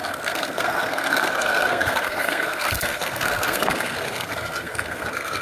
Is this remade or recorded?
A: remade